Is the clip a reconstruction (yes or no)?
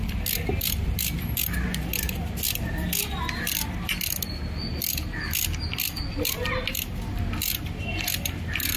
no